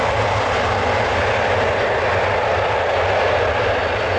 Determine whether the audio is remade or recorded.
recorded